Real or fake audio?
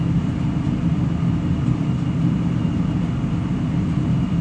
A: real